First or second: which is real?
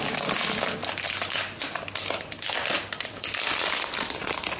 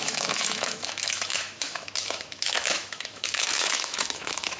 first